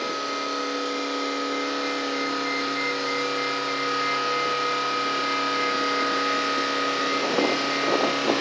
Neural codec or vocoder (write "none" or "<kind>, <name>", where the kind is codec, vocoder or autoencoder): none